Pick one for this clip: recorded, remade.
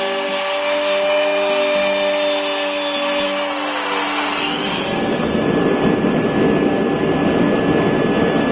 recorded